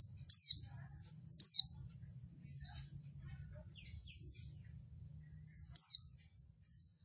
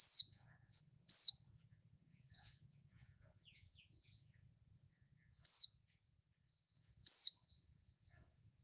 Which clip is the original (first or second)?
first